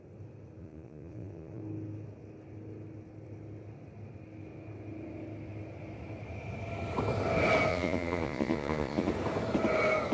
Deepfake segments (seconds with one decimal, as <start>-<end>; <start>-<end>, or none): 0.6-1.6; 7.7-9.1